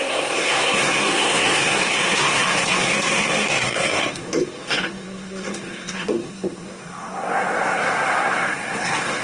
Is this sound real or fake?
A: fake